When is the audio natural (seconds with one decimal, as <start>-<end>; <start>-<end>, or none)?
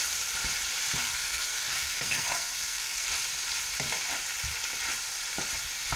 0.0-1.0; 3.1-6.0